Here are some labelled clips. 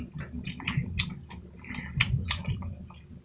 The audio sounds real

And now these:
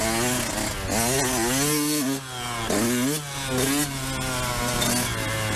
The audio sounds real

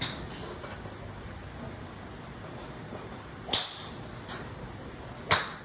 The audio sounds real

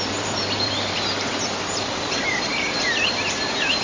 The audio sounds fake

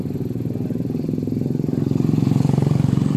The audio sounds fake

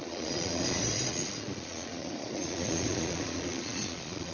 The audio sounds fake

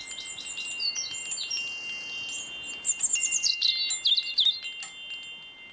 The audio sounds real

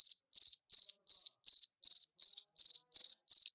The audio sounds real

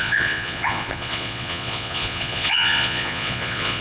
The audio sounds fake